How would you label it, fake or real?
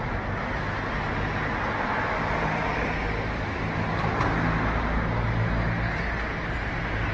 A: real